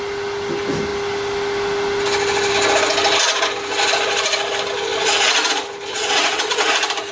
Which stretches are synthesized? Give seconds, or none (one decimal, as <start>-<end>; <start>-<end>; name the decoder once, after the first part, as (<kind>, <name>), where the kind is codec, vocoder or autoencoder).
5.9-6.6 (vocoder, WaveNeXt)